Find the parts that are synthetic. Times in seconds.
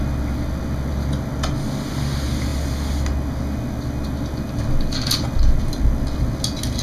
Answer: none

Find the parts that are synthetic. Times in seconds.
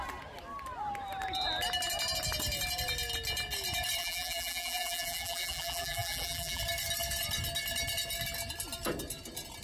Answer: 4.0-6.6 (vocoder, BigVGAN v2)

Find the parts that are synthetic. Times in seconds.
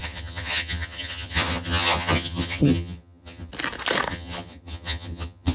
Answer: 0.0-3.5 (vocoder, HiFi-GAN); 4.1-5.5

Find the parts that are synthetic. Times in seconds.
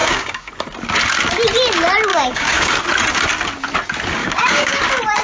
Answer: 0.0-0.5 (codec, DAC); 2.1-2.7; 4.2-4.8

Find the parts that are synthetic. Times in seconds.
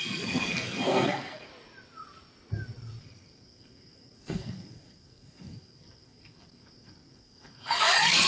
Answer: 0.0-1.5 (codec, SNAC); 3.0-8.3